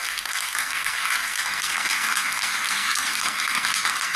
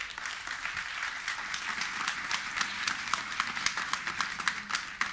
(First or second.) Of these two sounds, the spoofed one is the first